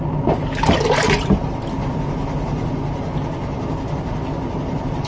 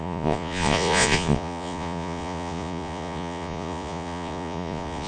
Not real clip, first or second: second